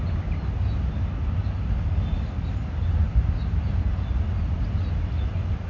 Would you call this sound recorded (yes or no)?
yes